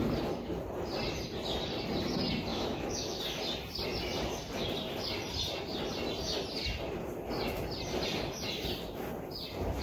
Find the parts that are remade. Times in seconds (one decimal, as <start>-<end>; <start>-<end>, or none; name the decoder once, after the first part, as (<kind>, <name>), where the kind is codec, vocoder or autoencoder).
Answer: 2.5-3.2 (autoencoder, DAC-VAE)